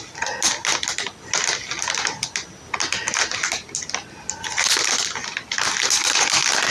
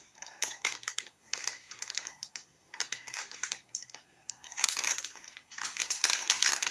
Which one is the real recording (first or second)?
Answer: first